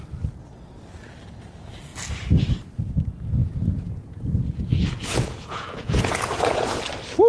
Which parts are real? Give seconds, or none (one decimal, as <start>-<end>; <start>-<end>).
0.0-3.4; 6.8-7.3